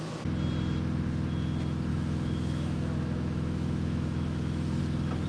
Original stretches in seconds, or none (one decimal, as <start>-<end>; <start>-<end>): 0.0-1.9; 4.8-5.3